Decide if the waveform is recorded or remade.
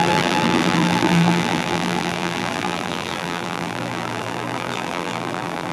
remade